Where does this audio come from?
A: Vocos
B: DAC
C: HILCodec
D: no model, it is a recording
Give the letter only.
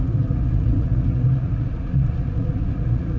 A